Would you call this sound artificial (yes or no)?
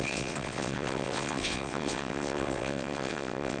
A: yes